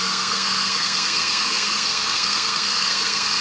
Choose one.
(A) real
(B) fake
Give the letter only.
B